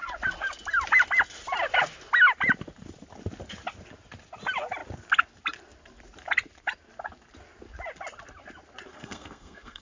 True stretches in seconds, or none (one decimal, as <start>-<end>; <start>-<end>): 0.0-8.9

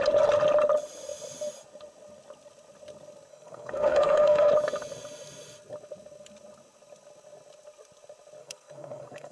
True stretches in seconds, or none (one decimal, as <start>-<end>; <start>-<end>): 0.0-3.3; 4.5-8.4

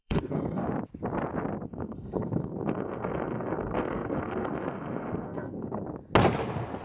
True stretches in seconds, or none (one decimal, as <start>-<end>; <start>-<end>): 0.7-1.7; 5.8-6.8

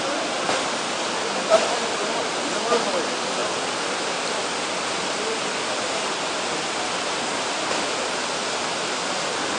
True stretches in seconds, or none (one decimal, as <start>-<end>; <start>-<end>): 0.0-9.6